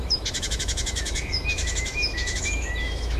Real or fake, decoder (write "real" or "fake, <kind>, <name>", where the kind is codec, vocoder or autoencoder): fake, autoencoder, DAC-VAE